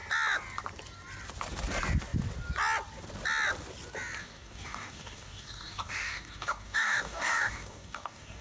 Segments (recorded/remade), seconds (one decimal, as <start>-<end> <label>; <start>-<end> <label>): 0.0-4.2 recorded; 4.2-8.4 remade